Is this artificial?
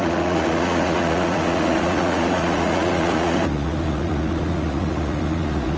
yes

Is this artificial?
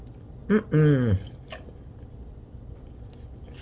no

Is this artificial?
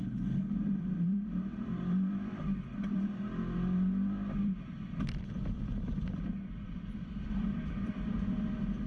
yes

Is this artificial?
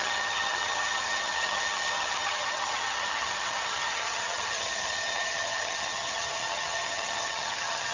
yes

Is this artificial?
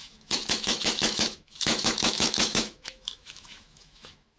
yes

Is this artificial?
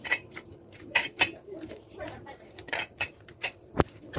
yes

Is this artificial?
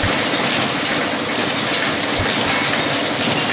no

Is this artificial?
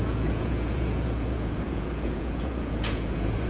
yes